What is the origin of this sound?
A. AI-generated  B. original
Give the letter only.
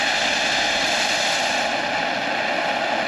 B